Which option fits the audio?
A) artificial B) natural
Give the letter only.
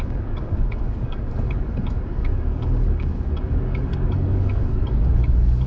A